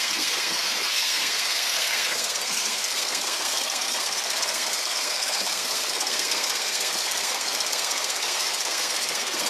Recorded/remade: remade